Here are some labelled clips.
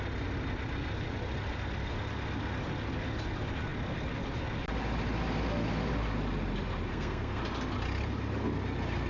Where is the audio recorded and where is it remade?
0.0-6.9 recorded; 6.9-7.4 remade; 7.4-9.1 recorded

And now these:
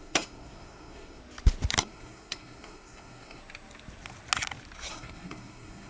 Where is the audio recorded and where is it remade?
0.0-1.2 remade; 1.2-1.8 recorded; 1.8-3.4 remade; 3.4-4.9 recorded; 4.9-5.9 remade

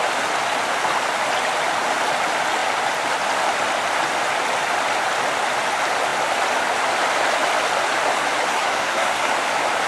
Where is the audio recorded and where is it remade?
0.0-8.5 recorded; 8.5-9.3 remade; 9.3-9.9 recorded

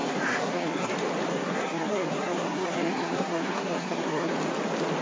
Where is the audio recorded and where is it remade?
0.0-0.9 remade; 0.9-1.3 recorded; 1.3-4.3 remade; 4.3-5.0 recorded

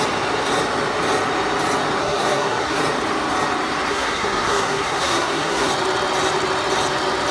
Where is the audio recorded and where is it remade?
0.0-2.0 recorded; 2.0-2.8 remade; 2.8-3.9 recorded; 3.9-5.7 remade; 5.7-7.3 recorded